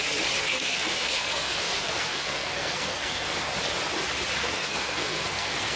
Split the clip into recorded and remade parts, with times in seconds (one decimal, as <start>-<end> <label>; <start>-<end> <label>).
0.0-0.4 recorded; 0.4-3.5 remade; 3.5-4.4 recorded; 4.4-5.8 remade